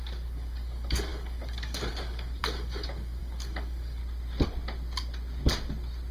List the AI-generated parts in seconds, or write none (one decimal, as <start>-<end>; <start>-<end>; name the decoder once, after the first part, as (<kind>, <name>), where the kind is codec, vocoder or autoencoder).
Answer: 0.0-4.0 (codec, DAC)